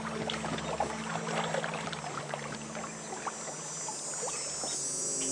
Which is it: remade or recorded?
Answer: recorded